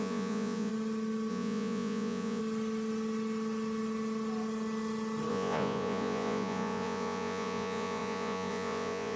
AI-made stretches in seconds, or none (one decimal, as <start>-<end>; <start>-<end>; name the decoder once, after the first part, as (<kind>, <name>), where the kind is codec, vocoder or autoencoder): 0.0-0.7 (vocoder, Vocos); 1.3-2.4; 5.3-9.2